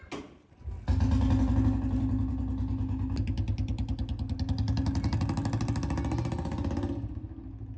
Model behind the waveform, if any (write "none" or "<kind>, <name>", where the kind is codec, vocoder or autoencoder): none